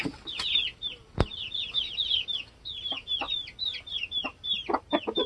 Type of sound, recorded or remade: recorded